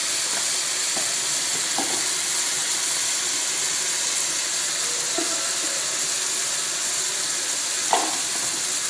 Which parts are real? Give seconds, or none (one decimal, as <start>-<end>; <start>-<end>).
0.0-8.9